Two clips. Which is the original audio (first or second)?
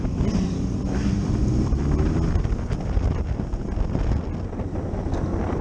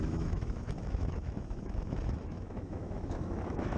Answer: first